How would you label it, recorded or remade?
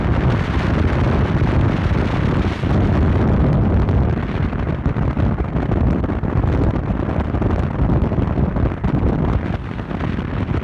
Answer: recorded